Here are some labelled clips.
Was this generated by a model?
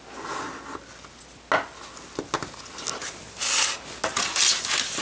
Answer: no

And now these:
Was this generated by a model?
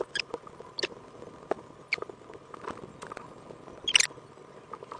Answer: no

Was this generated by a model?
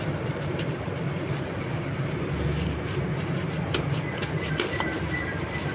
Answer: no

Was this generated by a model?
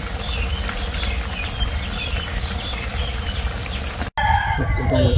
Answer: no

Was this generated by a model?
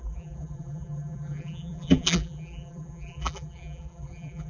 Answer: yes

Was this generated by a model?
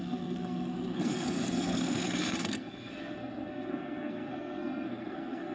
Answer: yes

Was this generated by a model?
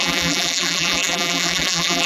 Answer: yes